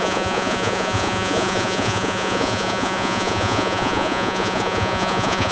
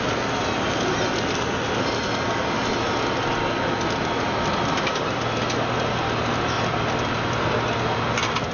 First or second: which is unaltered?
second